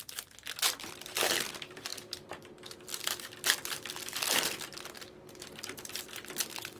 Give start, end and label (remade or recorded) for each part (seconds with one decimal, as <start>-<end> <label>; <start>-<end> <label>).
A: 0.0-6.8 recorded